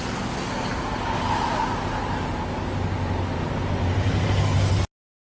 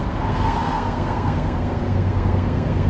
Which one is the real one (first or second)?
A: first